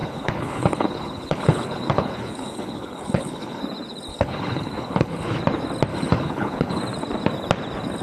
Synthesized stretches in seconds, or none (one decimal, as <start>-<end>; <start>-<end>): 0.0-3.6; 4.1-5.4; 5.9-6.8